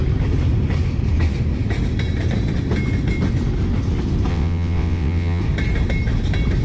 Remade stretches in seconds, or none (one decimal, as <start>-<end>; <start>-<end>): 4.3-5.4

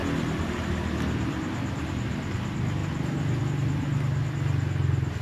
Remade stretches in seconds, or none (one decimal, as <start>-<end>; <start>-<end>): none

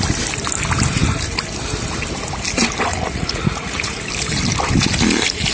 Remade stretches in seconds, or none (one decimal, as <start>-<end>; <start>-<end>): 2.9-4.0

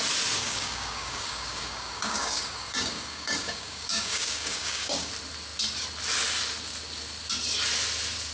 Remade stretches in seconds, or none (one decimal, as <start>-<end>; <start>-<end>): 0.4-5.1

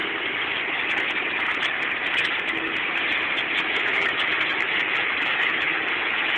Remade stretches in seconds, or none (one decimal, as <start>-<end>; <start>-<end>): 3.8-6.4

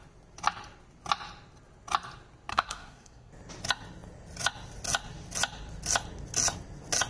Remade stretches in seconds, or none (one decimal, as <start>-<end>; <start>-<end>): 2.5-3.3

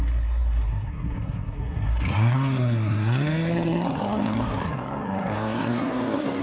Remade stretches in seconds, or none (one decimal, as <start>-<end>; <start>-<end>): 0.0-6.4